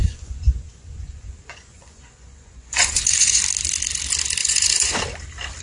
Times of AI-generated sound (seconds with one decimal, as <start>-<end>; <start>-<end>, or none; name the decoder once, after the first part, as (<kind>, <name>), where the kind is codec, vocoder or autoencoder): 0.0-3.4 (vocoder, Vocos); 4.4-4.9